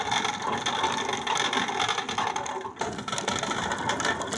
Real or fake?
real